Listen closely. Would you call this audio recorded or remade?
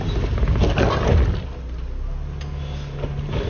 recorded